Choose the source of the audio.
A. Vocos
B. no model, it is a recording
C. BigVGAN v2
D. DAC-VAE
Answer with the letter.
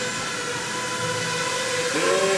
B